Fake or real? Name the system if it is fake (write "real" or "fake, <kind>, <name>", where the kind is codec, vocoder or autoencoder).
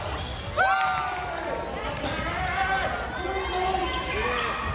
real